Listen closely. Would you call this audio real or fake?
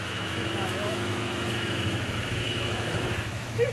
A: fake